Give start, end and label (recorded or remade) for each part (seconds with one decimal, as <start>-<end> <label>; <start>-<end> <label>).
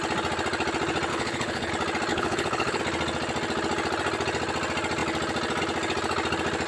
0.0-1.1 recorded; 1.1-1.7 remade; 1.7-2.1 recorded; 2.1-2.8 remade; 2.8-6.7 recorded